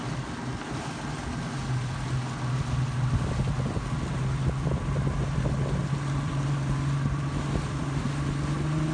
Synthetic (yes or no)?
no